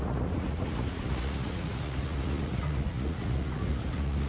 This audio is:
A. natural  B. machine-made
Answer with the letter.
B